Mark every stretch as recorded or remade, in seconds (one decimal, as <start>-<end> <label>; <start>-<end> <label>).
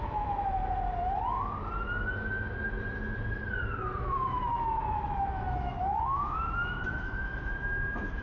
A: 0.0-0.6 remade; 0.6-4.0 recorded; 4.0-8.2 remade